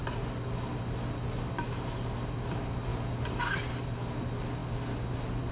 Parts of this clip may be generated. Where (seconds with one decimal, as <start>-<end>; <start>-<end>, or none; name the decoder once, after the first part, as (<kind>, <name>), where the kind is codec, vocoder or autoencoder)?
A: none